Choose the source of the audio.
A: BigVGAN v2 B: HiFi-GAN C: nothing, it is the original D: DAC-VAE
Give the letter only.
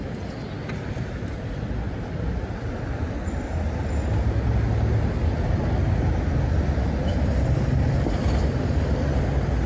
C